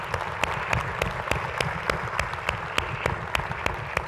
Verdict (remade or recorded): recorded